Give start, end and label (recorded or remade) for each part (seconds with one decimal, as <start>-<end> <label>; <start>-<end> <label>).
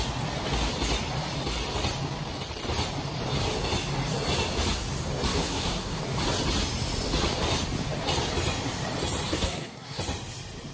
0.0-5.3 recorded; 5.3-6.0 remade; 6.0-9.3 recorded; 9.3-10.0 remade; 10.0-10.7 recorded